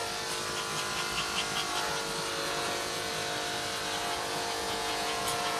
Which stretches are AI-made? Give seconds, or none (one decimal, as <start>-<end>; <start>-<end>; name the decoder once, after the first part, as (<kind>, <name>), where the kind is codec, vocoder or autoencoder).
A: 2.4-3.1 (vocoder, Vocos); 4.0-5.6